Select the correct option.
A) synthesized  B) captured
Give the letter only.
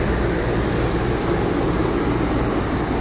B